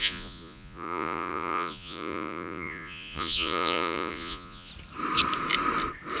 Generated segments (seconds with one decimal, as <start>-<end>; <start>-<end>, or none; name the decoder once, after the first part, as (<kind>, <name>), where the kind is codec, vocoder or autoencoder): 0.0-4.7 (vocoder, Vocos)